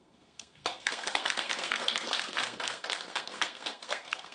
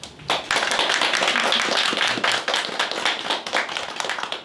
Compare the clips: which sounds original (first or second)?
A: second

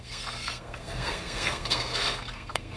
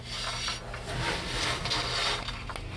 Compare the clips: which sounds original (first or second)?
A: second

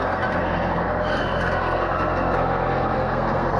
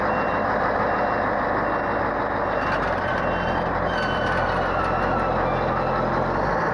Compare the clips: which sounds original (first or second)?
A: second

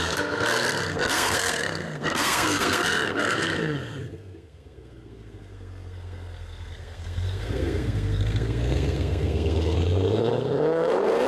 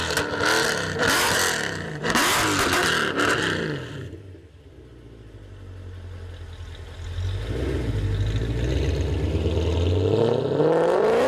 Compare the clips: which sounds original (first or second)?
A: second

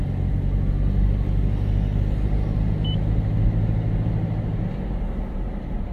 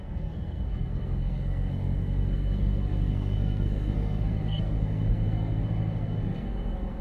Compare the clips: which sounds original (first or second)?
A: first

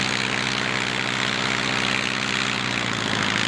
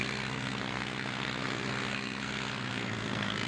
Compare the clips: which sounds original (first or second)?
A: first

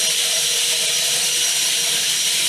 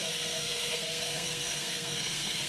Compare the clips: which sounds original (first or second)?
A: first